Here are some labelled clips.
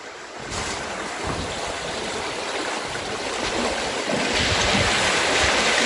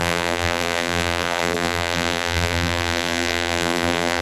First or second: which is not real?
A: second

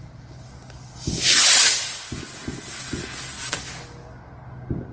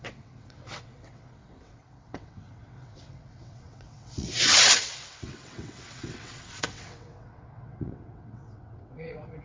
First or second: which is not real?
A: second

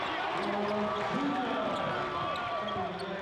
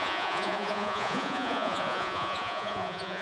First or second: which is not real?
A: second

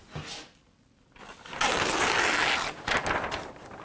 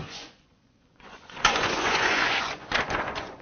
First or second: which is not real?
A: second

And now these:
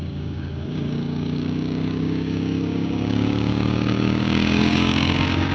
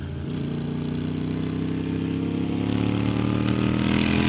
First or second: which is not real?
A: first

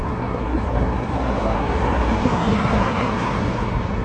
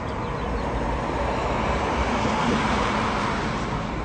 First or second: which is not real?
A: first